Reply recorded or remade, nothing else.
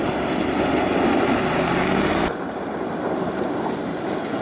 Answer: recorded